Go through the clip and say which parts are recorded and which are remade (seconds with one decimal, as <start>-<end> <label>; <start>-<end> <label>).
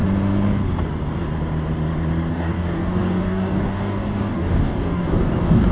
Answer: 0.0-2.3 recorded; 2.3-5.7 remade